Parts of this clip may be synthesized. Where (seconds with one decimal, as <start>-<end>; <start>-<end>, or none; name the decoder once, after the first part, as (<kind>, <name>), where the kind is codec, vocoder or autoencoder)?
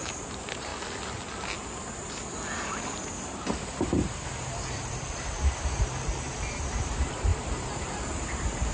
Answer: 0.0-0.7 (vocoder, BigVGAN v2); 3.1-8.7